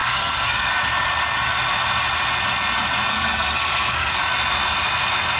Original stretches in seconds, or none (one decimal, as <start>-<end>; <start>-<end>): 0.7-3.1; 4.1-5.4